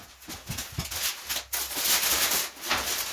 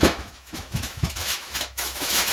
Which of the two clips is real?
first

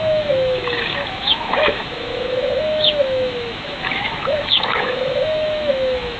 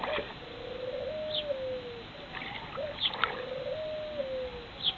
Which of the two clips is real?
second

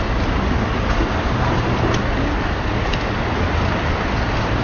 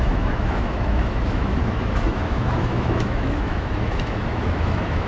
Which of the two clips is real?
first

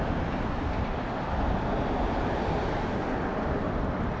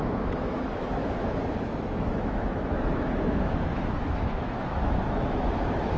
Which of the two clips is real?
first